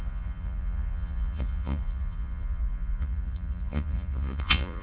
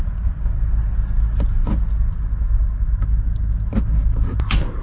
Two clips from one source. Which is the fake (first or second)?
first